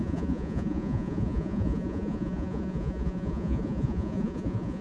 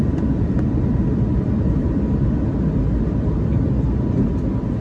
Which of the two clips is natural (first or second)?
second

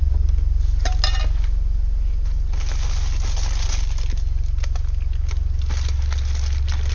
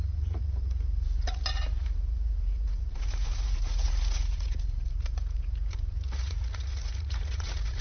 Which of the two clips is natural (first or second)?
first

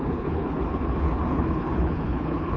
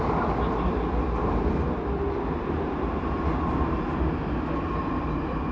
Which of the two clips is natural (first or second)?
second